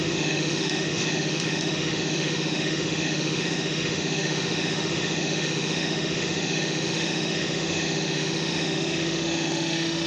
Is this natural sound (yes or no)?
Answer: no